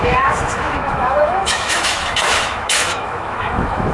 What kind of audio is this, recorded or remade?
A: remade